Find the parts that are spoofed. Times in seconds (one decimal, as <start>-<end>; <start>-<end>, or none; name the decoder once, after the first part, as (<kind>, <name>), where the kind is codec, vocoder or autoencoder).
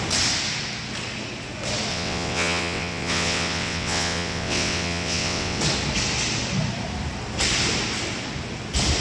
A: 1.9-5.6 (vocoder, WaveNeXt)